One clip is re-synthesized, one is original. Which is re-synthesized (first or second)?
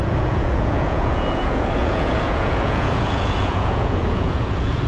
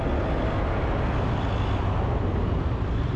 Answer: first